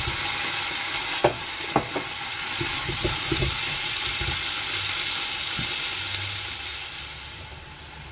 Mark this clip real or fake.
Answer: real